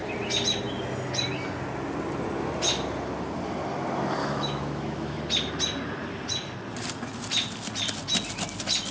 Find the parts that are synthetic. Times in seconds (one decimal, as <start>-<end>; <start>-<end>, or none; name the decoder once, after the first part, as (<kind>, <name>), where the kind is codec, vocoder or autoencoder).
4.2-5.2 (autoencoder, DAC-VAE)